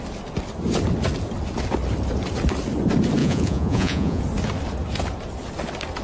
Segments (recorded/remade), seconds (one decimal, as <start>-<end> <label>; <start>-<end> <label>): 0.0-3.2 recorded; 3.2-4.2 remade; 4.2-6.0 recorded